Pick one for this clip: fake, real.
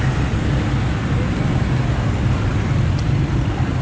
real